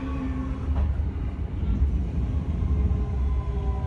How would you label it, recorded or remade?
recorded